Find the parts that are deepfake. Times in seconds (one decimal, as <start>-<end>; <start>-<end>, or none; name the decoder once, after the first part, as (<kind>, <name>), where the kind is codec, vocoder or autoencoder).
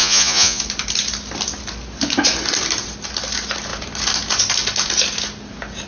0.0-0.6 (vocoder, Vocos)